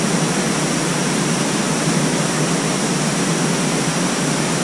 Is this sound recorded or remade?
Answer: recorded